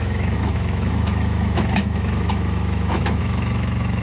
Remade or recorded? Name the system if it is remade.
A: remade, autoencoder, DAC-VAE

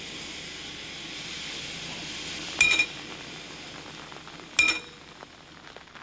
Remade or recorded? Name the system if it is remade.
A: recorded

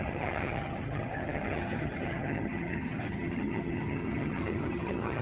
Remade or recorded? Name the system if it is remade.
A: remade, vocoder, HiFi-GAN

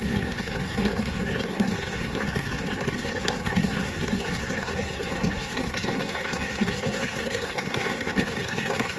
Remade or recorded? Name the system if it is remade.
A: remade, codec, SNAC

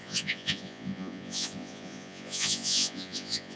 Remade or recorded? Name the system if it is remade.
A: remade, vocoder, Vocos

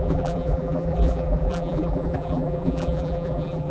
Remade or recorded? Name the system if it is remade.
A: remade, vocoder, BigVGAN v2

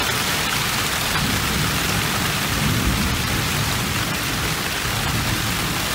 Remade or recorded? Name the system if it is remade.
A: recorded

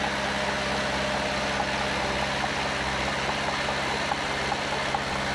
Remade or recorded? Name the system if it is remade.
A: recorded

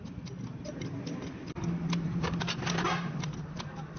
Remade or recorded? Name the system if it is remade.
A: recorded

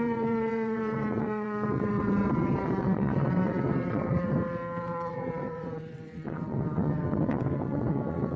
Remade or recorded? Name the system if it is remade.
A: remade, vocoder, WaveNeXt